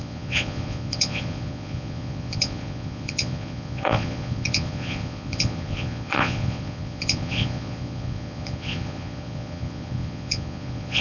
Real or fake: fake